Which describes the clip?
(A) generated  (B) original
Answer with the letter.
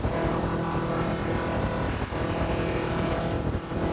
B